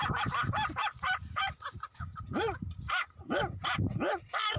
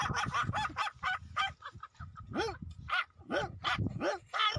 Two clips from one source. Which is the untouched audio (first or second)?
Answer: second